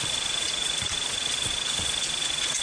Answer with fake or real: fake